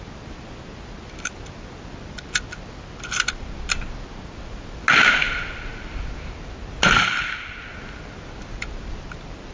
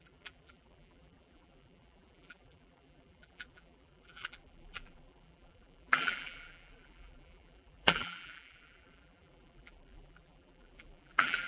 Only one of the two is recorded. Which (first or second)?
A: first